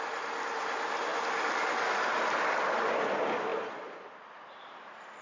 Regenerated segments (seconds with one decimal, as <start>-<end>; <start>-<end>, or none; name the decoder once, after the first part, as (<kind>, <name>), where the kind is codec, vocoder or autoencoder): none